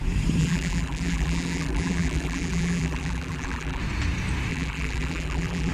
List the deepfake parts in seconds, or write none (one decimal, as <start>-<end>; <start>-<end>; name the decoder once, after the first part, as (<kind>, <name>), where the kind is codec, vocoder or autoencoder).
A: 0.4-3.8 (vocoder, BigVGAN v2); 4.5-5.7